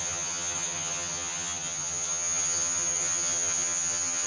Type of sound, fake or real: fake